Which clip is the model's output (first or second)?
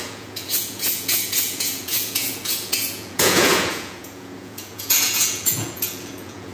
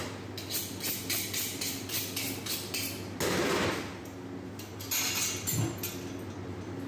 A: first